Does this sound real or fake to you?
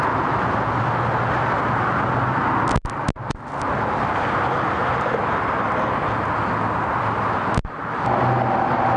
real